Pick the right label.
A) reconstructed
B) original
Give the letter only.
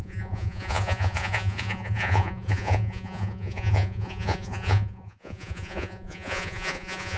A